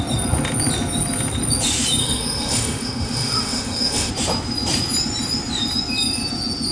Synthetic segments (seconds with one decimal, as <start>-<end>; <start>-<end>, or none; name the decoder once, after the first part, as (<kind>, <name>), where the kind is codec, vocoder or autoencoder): 2.0-4.1 (autoencoder, DAC-VAE)